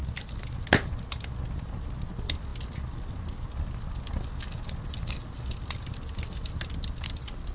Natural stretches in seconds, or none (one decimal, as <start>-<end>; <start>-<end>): 0.0-7.5